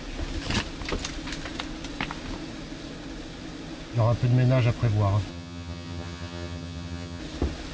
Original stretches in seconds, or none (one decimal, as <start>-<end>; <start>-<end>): 0.0-5.3; 7.2-7.7